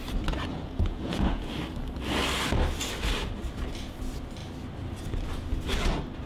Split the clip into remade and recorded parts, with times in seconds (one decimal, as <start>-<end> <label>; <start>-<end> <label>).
0.0-0.5 recorded; 0.5-1.5 remade; 1.5-6.3 recorded